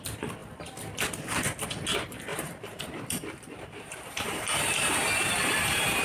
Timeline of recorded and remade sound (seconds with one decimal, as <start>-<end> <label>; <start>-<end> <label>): 0.0-2.3 recorded; 2.3-6.0 remade